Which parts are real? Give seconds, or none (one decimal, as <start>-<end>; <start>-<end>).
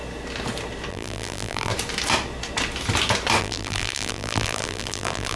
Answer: 0.0-0.9; 1.7-3.4